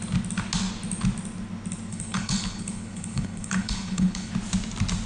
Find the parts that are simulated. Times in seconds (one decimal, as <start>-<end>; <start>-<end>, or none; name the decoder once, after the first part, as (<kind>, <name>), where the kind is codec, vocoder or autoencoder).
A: 1.9-4.3 (codec, HILCodec)